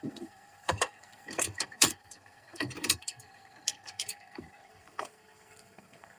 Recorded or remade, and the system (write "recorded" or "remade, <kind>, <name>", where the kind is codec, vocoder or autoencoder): remade, codec, SNAC